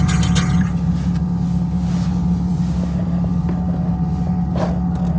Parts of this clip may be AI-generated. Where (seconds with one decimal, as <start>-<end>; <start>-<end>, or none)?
none

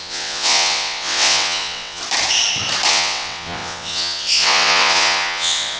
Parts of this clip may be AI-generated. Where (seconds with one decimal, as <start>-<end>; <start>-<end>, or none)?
0.0-2.0; 2.9-5.8

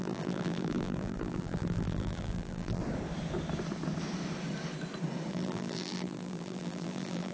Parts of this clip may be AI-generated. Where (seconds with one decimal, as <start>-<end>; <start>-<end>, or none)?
0.0-2.8; 5.3-7.3